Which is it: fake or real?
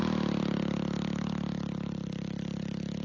real